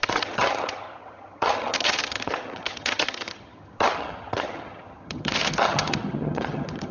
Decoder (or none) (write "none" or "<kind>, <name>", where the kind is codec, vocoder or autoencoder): vocoder, HiFi-GAN